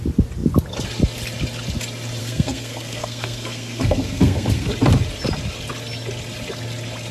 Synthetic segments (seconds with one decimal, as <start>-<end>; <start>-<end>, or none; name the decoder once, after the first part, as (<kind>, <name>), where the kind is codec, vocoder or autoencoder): 2.2-4.7 (codec, SNAC)